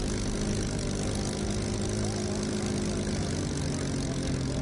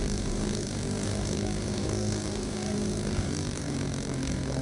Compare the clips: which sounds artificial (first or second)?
second